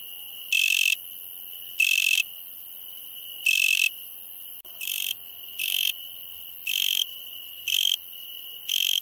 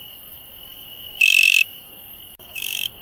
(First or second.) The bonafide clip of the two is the first